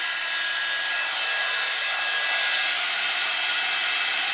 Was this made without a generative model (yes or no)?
yes